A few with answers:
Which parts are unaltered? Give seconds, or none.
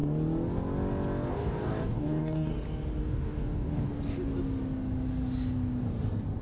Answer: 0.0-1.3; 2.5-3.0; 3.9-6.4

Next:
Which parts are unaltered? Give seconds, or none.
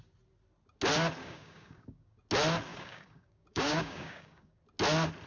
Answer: 0.0-1.2; 2.2-2.7; 4.6-5.3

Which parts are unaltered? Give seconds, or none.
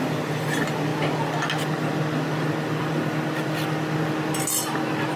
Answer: 0.0-5.2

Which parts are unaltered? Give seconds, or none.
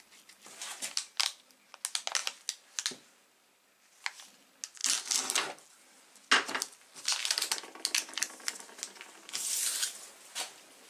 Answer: 0.0-10.9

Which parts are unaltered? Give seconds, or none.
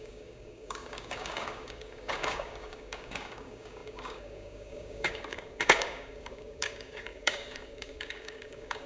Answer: none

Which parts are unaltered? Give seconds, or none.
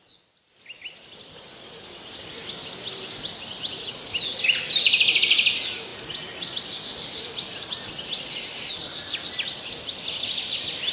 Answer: 0.0-10.9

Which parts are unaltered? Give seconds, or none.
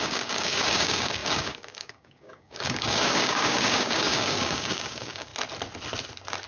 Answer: 5.3-6.5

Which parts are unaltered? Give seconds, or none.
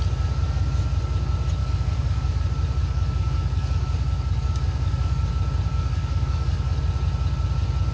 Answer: 0.0-1.6; 2.4-2.8; 5.3-5.7; 6.8-7.9